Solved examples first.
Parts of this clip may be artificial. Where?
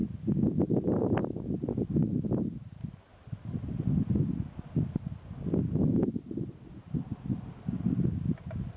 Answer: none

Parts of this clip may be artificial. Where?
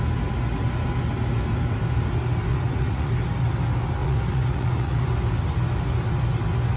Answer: 2.5-3.1 (vocoder, Vocos); 4.0-5.0